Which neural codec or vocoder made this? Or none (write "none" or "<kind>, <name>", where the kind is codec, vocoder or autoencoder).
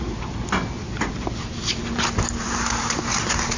none